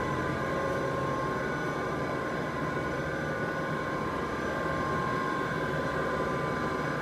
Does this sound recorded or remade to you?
recorded